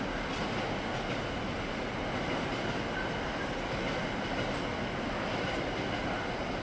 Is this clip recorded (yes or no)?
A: yes